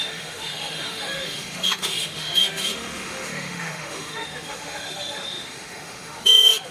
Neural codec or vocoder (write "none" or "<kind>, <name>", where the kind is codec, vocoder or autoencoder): autoencoder, DAC-VAE